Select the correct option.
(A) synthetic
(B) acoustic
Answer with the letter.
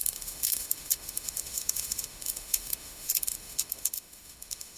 A